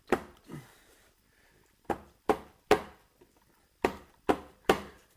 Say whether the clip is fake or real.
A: fake